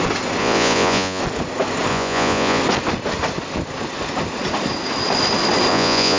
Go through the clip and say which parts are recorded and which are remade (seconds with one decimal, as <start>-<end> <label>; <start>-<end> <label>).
0.0-0.4 recorded; 0.4-1.2 remade; 1.2-1.9 recorded; 1.9-2.6 remade; 2.6-5.7 recorded; 5.7-6.2 remade

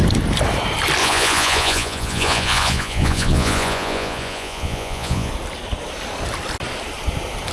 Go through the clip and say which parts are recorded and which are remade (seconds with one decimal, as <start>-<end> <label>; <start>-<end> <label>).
0.0-1.0 recorded; 1.0-5.3 remade; 5.3-7.5 recorded

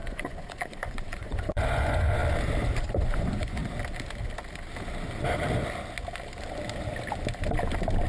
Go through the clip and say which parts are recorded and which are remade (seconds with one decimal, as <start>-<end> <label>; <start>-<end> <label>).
0.0-2.2 remade; 2.2-2.9 recorded; 2.9-3.6 remade; 3.6-8.1 recorded